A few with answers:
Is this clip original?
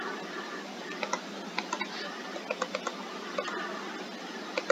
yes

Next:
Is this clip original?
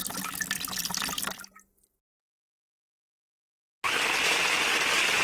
yes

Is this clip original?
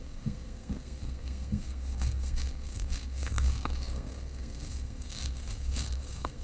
no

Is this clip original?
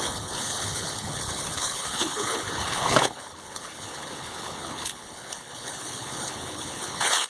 no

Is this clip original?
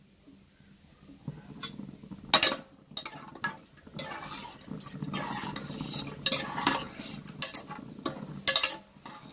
yes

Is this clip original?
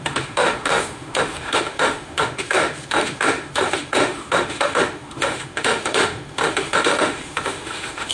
no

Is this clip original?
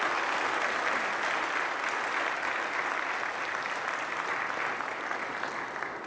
yes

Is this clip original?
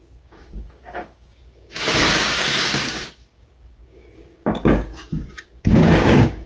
no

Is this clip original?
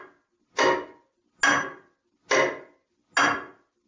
yes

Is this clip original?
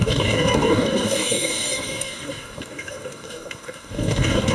no